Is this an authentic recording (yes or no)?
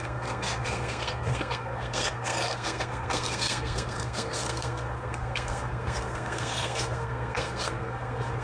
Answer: no